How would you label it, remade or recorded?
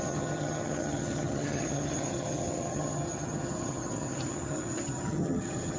remade